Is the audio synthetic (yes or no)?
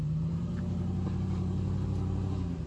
no